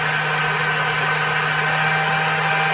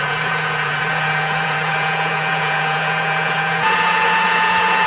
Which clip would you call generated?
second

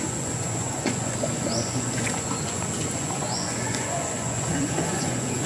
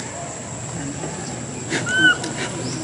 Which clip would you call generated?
first